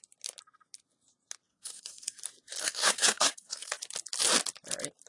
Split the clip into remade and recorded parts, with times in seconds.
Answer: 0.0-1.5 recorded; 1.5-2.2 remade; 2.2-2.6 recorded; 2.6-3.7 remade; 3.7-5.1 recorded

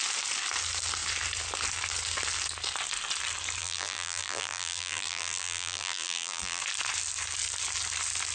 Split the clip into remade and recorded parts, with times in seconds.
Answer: 0.0-3.6 recorded; 3.6-6.6 remade; 6.6-8.3 recorded

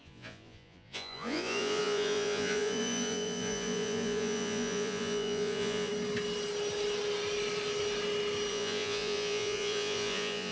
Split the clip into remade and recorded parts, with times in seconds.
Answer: 0.0-5.9 remade; 5.9-8.5 recorded; 8.5-10.5 remade

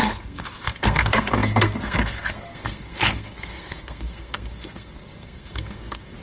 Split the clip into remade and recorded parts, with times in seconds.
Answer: 0.0-6.2 remade

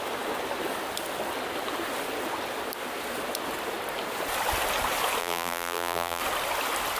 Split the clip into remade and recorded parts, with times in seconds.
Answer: 0.0-5.2 recorded; 5.2-6.2 remade; 6.2-7.0 recorded

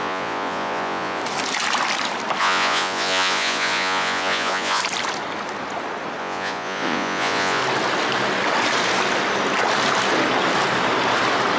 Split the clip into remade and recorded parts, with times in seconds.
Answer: 0.0-1.2 remade; 1.2-2.4 recorded; 2.4-4.8 remade; 4.8-6.2 recorded; 6.2-7.6 remade; 7.6-11.6 recorded

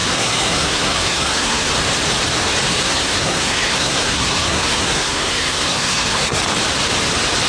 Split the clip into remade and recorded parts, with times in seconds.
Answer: 0.0-1.7 remade; 1.7-2.7 recorded; 2.7-6.4 remade; 6.4-7.5 recorded

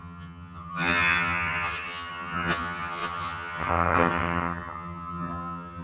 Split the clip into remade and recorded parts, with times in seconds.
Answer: 0.0-5.8 remade